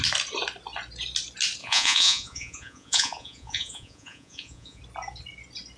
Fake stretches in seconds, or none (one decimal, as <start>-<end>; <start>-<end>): 1.6-4.8

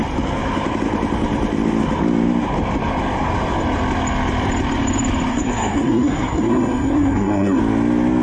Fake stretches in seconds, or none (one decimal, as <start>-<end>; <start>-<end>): 5.3-7.6

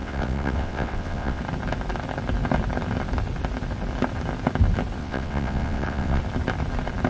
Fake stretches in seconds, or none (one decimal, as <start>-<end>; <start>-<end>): 0.0-1.4; 5.0-6.2

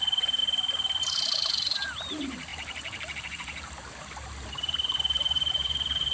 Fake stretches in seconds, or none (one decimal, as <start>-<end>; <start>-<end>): 0.0-0.4; 1.0-6.1

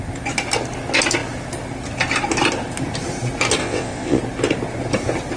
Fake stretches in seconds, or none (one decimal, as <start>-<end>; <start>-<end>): 3.6-4.2

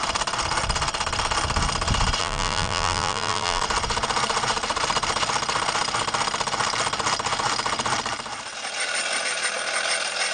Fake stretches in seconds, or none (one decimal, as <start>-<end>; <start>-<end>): 2.2-3.6

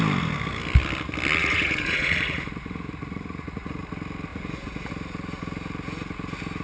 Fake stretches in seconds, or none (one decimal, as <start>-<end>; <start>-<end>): 1.4-3.8; 4.3-4.9